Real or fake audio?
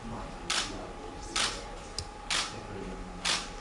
real